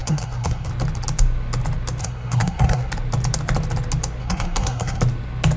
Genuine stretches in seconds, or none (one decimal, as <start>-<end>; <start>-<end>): 0.7-2.0; 2.9-4.2; 5.0-5.6